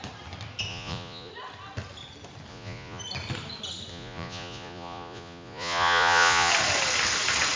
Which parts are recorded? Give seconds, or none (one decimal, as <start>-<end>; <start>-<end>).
0.0-0.7; 1.3-2.5; 3.0-3.9; 6.5-7.6